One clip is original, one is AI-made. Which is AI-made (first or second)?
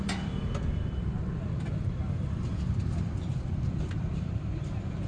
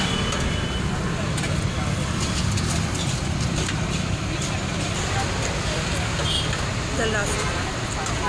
first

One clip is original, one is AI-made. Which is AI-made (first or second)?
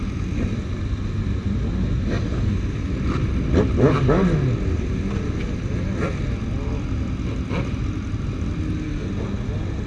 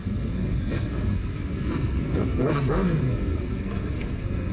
second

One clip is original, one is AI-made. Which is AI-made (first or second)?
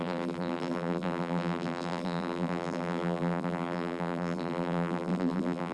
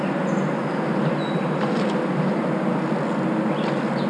first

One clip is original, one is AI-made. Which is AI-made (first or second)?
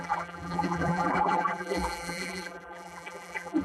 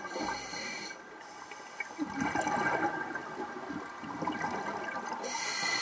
first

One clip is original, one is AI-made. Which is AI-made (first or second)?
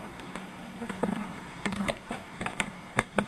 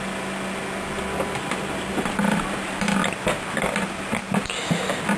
first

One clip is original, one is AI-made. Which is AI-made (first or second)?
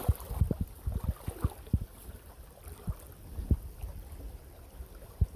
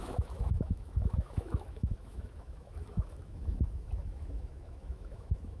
second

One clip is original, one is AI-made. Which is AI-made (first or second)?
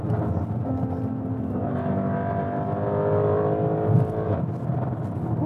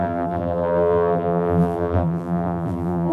second